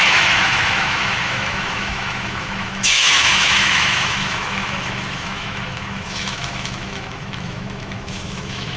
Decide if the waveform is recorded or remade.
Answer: remade